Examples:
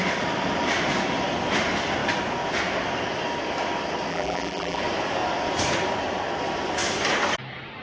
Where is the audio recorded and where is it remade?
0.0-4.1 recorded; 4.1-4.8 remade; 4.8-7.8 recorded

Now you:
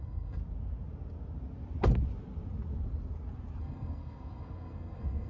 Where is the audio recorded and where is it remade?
0.0-0.4 remade; 0.4-3.6 recorded; 3.6-5.3 remade

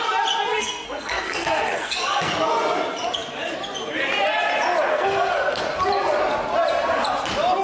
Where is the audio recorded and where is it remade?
0.0-0.5 recorded; 0.5-2.3 remade; 2.3-4.9 recorded; 4.9-5.6 remade; 5.6-7.6 recorded

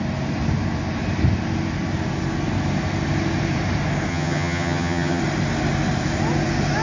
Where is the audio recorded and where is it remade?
0.0-4.1 recorded; 4.1-5.2 remade; 5.2-6.8 recorded